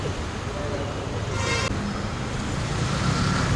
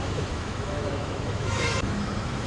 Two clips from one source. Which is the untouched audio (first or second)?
first